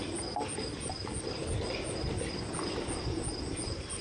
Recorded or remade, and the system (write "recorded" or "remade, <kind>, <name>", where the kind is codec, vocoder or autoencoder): recorded